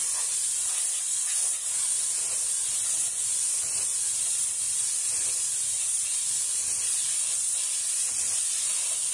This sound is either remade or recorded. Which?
recorded